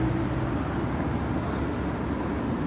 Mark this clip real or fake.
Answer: real